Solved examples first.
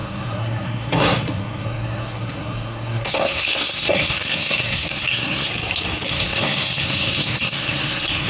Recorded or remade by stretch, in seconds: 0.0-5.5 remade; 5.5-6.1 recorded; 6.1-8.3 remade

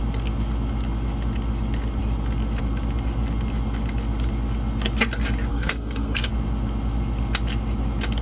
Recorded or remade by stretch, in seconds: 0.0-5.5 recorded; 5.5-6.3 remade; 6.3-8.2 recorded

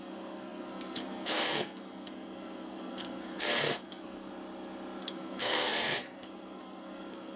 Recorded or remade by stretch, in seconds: 0.0-4.3 remade; 4.3-5.0 recorded; 5.0-7.4 remade

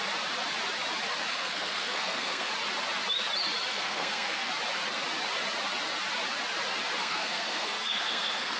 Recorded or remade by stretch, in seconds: 0.0-1.3 recorded; 1.3-2.5 remade; 2.5-3.7 recorded; 3.7-4.5 remade; 4.5-7.0 recorded; 7.0-8.6 remade

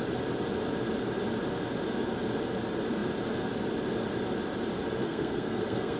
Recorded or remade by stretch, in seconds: 0.0-5.0 recorded; 5.0-6.0 remade